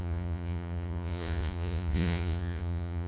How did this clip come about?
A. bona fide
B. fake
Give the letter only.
B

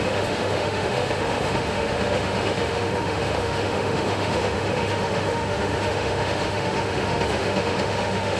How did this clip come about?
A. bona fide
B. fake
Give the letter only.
B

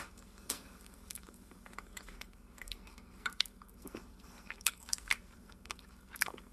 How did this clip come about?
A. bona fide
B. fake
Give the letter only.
B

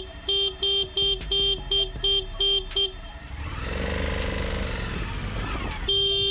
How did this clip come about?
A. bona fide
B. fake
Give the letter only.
A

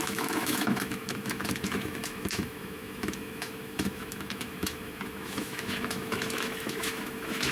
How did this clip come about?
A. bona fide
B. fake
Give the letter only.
B